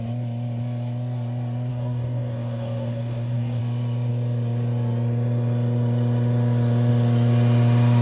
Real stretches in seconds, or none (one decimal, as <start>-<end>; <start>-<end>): 0.0-1.7; 3.6-8.0